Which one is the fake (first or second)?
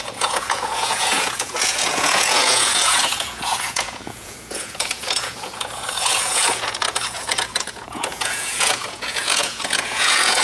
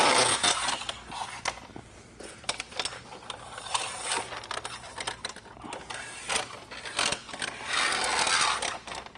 first